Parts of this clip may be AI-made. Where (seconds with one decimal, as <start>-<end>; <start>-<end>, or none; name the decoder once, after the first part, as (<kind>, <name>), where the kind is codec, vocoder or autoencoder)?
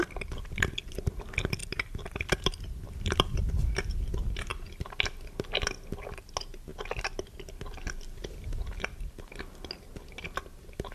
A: 1.6-4.0 (vocoder, BigVGAN v2)